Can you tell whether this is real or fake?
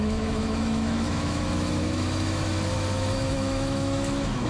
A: fake